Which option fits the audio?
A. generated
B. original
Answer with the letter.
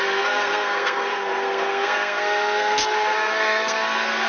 A